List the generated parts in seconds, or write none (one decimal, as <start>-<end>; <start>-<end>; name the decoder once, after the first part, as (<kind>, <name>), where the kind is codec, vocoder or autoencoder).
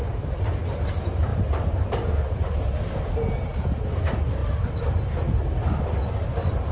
none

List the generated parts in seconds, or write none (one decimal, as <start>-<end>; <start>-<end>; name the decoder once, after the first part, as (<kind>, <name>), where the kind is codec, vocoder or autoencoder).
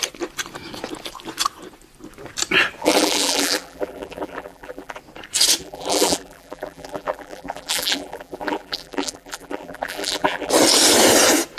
2.8-5.0 (vocoder, BigVGAN v2); 5.6-10.5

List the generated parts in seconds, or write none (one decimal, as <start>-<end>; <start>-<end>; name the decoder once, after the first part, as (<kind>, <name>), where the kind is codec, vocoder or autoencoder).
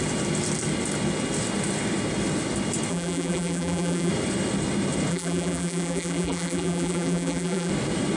2.9-4.1 (vocoder, BigVGAN v2); 5.1-7.7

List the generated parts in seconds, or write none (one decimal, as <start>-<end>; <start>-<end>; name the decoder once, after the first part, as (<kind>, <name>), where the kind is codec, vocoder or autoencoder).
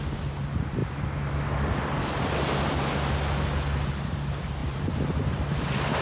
4.6-5.3 (vocoder, BigVGAN v2)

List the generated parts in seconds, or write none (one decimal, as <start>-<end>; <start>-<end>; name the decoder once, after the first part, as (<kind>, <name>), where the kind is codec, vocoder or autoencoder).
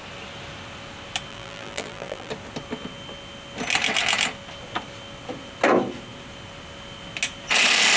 1.3-2.3 (vocoder, BigVGAN v2)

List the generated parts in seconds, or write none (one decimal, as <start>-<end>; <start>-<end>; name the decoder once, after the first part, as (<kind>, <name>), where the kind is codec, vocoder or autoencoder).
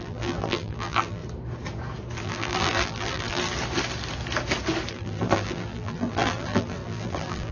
0.0-1.2 (vocoder, BigVGAN v2); 2.2-3.5; 4.9-7.5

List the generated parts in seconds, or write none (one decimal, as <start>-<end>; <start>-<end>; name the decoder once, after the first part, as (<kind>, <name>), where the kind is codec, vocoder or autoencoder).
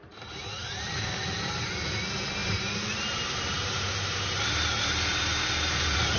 0.6-1.7 (vocoder, BigVGAN v2); 2.4-6.2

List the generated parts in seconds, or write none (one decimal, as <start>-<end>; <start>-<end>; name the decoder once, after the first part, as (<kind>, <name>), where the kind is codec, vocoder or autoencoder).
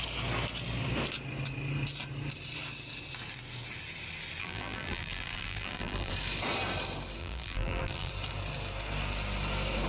4.4-6.1 (vocoder, BigVGAN v2); 7.2-8.1